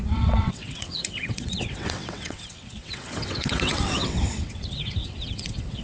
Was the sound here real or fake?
fake